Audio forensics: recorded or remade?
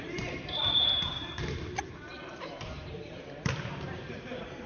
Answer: remade